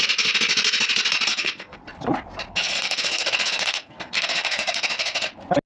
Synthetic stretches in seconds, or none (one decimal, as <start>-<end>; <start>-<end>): 1.3-1.8; 2.5-5.3